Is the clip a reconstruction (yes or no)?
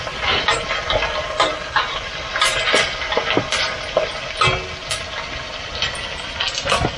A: no